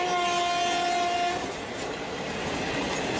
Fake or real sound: real